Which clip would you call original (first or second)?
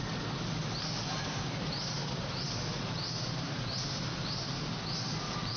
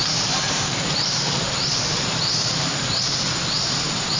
first